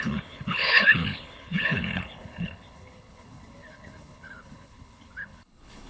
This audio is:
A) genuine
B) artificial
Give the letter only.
B